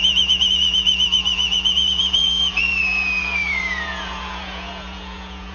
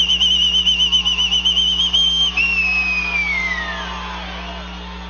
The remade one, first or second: first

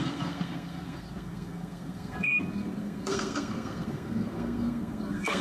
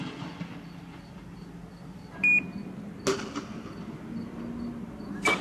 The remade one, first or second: first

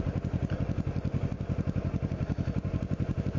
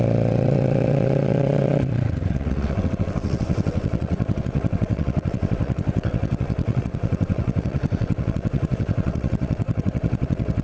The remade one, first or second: second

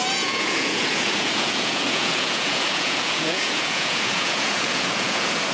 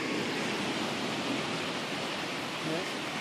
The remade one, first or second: first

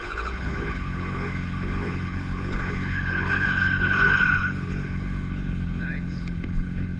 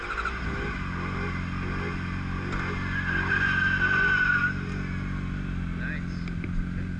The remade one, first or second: first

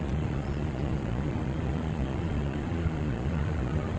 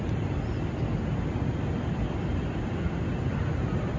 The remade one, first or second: first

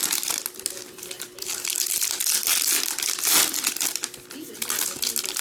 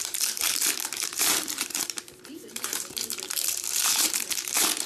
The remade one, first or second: second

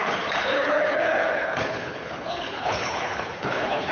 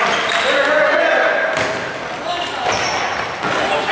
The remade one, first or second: first